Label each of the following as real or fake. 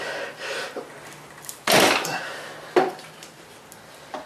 real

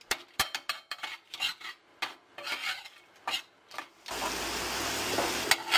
real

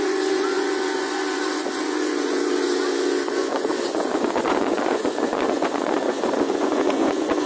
fake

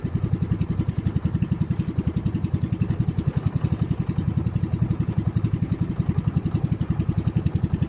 real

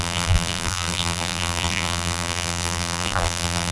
fake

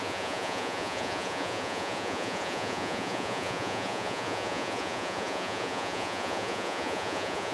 fake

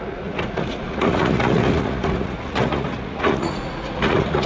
fake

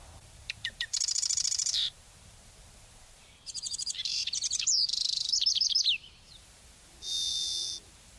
fake